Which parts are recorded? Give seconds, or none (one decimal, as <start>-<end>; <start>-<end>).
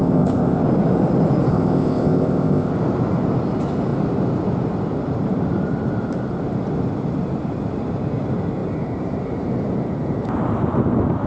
0.6-1.5; 2.7-11.3